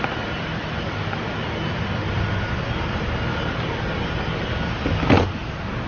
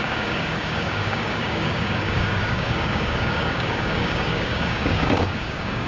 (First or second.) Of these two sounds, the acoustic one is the first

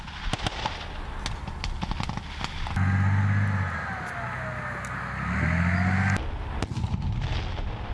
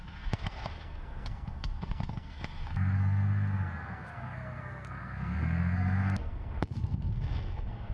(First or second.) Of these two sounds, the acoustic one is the first